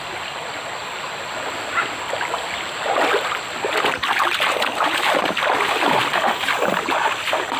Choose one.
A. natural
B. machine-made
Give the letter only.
A